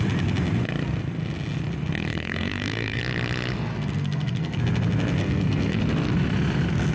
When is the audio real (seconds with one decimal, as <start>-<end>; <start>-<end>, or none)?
0.0-2.1; 3.0-3.7; 4.6-5.2; 5.8-6.9